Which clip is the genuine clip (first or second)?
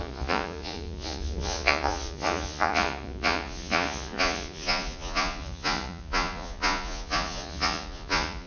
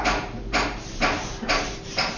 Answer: second